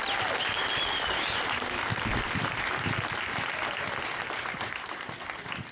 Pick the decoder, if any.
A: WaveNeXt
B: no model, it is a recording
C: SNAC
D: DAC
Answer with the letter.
B